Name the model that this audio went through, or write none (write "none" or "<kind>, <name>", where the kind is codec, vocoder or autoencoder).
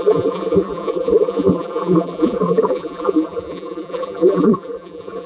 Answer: vocoder, BigVGAN v2